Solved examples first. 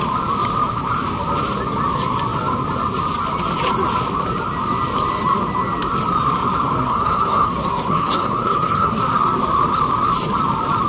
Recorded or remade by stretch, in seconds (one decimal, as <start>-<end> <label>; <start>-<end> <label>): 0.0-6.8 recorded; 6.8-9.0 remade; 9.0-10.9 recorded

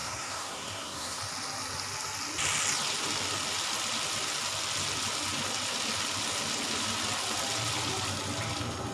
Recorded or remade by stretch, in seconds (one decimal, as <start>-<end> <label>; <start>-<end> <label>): 0.0-1.2 remade; 1.2-8.9 recorded

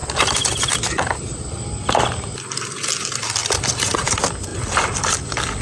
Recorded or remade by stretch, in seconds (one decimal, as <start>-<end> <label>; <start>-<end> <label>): 0.0-5.6 recorded

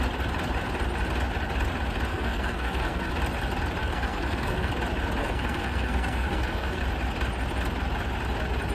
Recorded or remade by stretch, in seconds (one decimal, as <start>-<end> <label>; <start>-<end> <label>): 0.0-2.1 recorded; 2.1-3.1 remade; 3.1-3.8 recorded; 3.8-4.7 remade; 4.7-5.2 recorded; 5.2-6.8 remade; 6.8-8.7 recorded